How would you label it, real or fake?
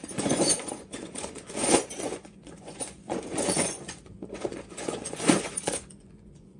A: fake